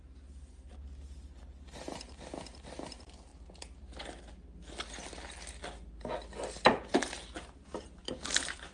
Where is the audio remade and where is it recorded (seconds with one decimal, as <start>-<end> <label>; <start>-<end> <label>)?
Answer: 0.0-8.7 recorded

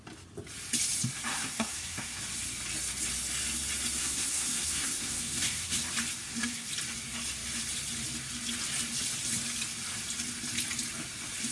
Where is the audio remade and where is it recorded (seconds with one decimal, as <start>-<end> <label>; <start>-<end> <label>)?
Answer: 0.0-1.3 recorded; 1.3-2.2 remade; 2.2-4.0 recorded; 4.0-5.8 remade; 5.8-6.2 recorded; 6.2-6.7 remade; 6.7-11.5 recorded